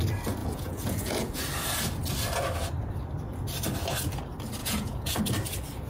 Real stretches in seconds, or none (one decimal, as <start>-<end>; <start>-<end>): 0.0-0.4; 1.4-4.6; 5.2-5.9